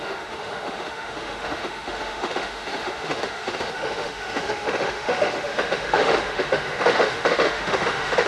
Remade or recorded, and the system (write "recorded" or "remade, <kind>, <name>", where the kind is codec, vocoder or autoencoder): remade, autoencoder, DAC-VAE